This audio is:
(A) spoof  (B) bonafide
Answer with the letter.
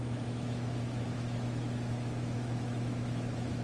A